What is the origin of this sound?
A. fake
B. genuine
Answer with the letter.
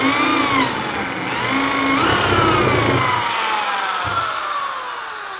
B